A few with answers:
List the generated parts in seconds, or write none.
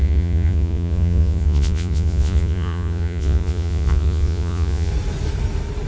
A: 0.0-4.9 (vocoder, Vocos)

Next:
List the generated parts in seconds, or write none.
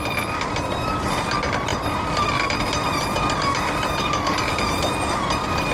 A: none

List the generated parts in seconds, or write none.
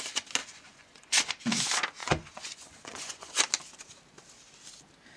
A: 0.4-1.3 (vocoder, Vocos); 2.0-3.3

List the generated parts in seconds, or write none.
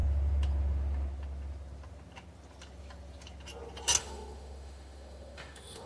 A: 4.0-5.9 (autoencoder, DAC-VAE)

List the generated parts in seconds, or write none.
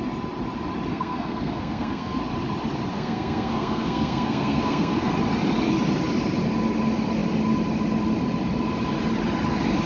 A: 0.9-2.2 (codec, SNAC); 2.9-5.1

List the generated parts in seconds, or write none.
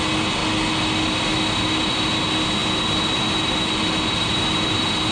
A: none